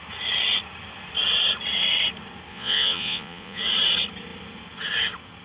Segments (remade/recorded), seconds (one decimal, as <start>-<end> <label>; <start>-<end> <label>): 0.0-2.5 recorded; 2.5-3.6 remade; 3.6-5.4 recorded